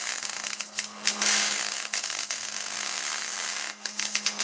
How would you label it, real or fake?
fake